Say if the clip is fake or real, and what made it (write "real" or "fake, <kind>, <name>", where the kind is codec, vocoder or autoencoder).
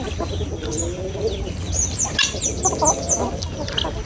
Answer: real